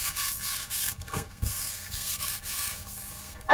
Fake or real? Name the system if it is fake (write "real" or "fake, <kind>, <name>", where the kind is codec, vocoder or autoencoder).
fake, codec, SNAC